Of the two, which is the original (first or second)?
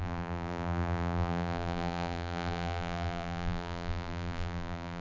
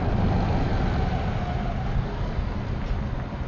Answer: second